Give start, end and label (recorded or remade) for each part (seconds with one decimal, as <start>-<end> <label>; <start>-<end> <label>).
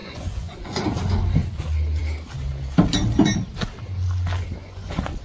0.0-0.8 remade; 0.8-4.6 recorded; 4.6-5.2 remade